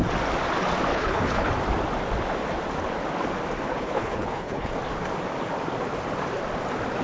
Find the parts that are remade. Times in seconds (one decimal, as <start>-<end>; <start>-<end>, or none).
0.9-1.5; 3.8-4.7